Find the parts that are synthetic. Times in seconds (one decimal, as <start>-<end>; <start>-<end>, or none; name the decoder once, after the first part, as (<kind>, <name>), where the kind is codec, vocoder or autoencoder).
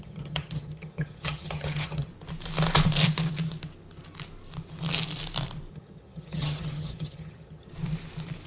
0.0-2.1 (vocoder, HiFi-GAN); 5.7-7.7